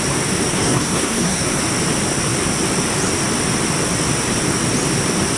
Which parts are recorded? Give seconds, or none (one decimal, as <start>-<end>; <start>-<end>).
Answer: 0.0-0.5; 1.6-5.4